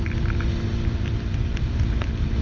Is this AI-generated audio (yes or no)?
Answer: no